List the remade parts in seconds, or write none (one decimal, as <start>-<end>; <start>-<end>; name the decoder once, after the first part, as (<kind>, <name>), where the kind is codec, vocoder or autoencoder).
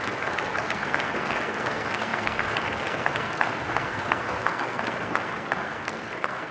0.0-6.5 (codec, SNAC)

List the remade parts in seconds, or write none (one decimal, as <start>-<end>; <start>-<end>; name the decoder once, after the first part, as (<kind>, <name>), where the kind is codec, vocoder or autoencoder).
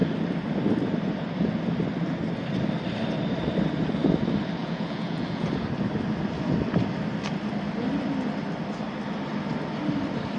4.6-5.5 (vocoder, Vocos)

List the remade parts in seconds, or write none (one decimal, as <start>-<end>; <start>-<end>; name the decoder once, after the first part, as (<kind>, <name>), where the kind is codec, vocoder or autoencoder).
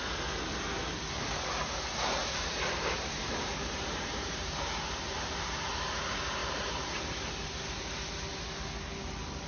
2.2-5.7 (vocoder, BigVGAN v2); 6.4-7.1